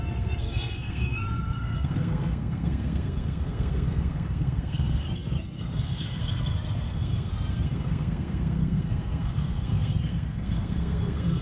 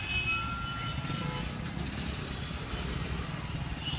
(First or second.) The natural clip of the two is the second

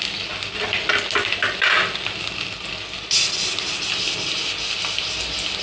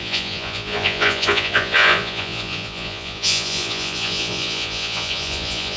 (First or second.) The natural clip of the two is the first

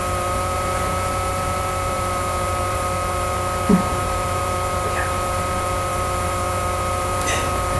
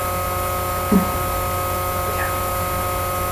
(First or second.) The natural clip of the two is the second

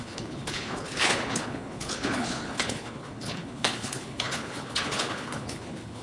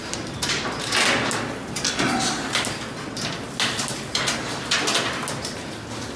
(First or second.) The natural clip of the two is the second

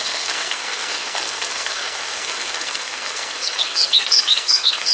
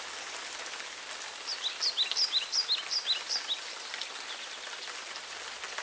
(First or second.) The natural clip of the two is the second